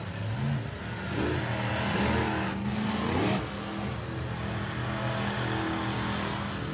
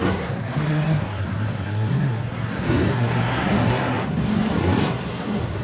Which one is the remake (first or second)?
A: second